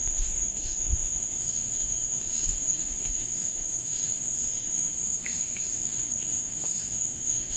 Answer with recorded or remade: remade